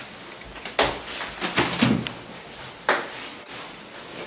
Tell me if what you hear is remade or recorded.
recorded